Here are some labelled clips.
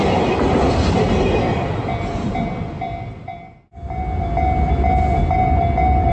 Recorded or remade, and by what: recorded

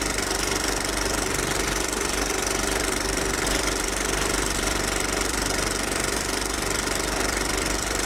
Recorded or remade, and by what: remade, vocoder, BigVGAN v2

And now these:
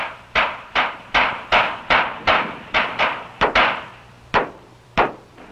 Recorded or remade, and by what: remade, vocoder, BigVGAN v2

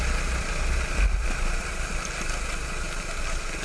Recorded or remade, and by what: recorded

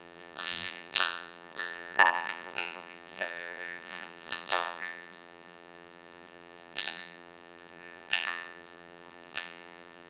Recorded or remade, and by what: remade, vocoder, BigVGAN v2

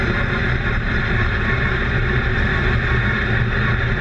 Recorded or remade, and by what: remade, vocoder, BigVGAN v2